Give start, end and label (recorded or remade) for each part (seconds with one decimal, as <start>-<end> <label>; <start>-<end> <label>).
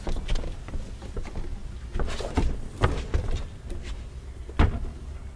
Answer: 0.0-5.4 recorded